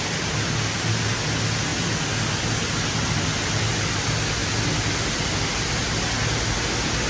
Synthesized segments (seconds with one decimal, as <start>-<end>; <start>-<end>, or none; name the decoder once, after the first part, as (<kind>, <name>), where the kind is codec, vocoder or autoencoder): none